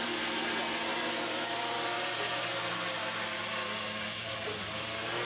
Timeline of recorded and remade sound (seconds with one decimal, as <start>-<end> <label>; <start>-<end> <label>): 0.0-5.2 recorded